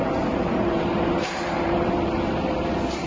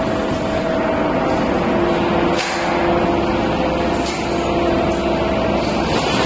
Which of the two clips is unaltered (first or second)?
second